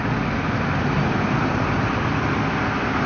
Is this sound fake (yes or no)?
no